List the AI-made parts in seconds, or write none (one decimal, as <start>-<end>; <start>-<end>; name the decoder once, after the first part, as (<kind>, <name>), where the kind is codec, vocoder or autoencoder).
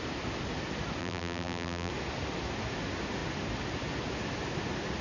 1.0-1.9 (vocoder, BigVGAN v2)